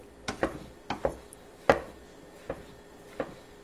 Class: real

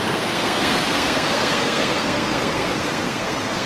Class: fake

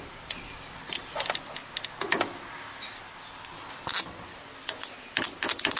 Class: real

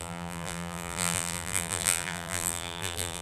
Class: fake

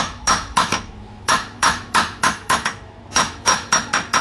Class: fake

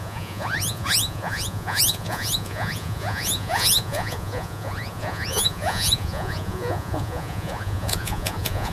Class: fake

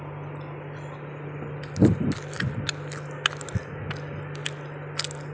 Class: real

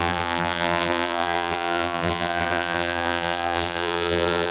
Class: fake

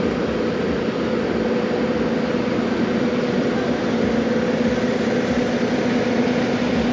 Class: real